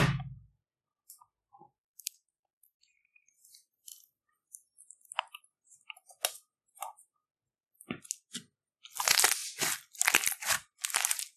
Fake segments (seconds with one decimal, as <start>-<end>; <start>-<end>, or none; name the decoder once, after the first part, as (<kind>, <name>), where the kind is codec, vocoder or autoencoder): 1.7-3.3 (codec, SNAC)